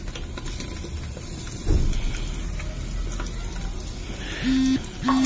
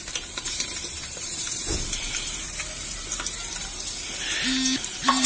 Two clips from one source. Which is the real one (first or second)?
first